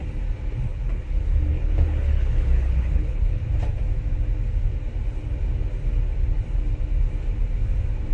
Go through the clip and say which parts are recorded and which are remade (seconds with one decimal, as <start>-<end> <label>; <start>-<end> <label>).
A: 0.0-0.7 recorded; 0.7-3.4 remade; 3.4-8.1 recorded